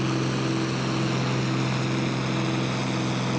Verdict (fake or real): real